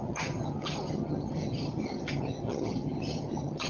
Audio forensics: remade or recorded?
remade